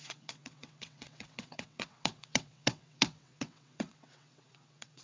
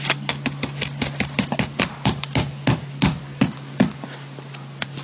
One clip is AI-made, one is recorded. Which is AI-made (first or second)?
first